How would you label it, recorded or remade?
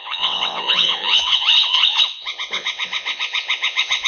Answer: remade